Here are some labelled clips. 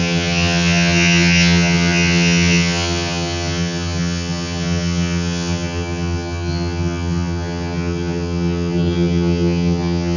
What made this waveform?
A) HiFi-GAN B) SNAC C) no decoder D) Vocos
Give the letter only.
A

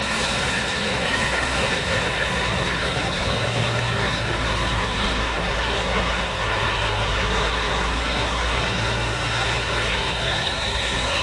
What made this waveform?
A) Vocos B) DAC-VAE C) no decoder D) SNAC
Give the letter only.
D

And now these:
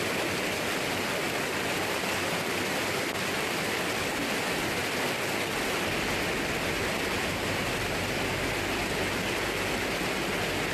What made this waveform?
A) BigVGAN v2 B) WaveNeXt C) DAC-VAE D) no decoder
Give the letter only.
D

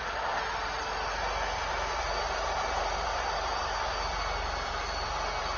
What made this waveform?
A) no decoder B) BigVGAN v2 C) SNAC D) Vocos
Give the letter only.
B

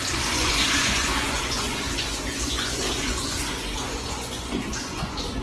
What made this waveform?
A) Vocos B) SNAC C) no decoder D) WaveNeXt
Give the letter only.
A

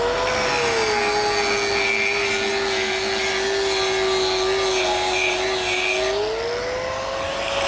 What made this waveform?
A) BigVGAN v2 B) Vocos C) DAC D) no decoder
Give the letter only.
D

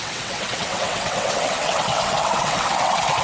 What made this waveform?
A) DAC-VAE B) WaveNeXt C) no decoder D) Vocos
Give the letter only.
B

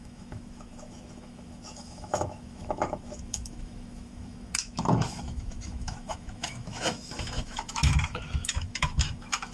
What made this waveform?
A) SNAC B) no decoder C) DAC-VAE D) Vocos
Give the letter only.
C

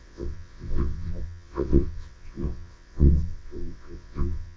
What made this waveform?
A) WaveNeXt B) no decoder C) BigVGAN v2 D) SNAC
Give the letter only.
A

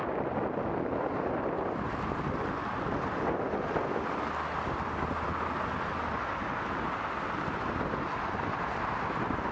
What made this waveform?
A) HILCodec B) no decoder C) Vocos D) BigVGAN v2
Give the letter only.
B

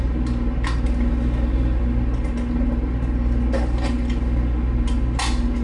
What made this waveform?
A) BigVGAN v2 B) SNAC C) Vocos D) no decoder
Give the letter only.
D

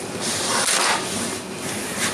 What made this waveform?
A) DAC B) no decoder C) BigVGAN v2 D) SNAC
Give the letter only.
C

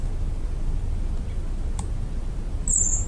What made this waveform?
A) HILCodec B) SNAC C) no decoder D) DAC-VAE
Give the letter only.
C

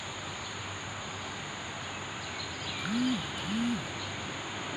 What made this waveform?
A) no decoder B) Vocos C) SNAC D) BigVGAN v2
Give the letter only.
A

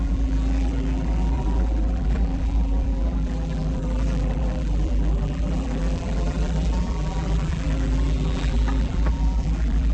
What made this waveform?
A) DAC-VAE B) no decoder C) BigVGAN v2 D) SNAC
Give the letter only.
C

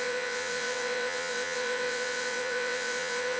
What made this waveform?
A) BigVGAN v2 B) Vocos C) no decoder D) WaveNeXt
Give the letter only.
D